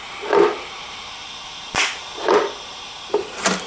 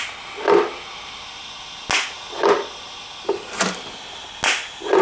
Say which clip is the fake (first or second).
first